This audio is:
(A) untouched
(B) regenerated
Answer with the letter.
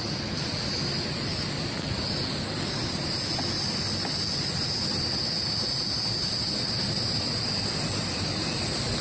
A